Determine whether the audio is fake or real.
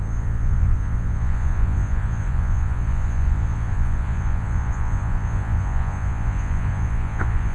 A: fake